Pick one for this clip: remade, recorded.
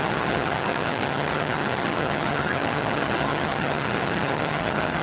remade